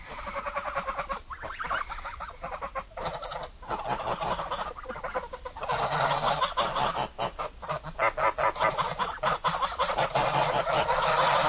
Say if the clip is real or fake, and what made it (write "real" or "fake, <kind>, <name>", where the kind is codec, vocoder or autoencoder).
real